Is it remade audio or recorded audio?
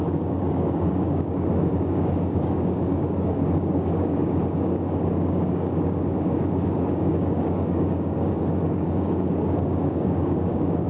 remade